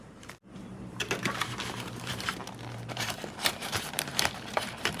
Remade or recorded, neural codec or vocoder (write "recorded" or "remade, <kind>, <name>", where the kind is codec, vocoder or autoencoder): remade, vocoder, BigVGAN v2